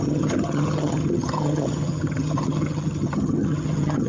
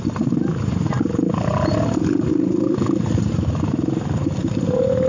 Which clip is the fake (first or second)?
first